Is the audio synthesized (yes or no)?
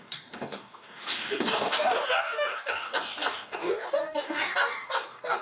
yes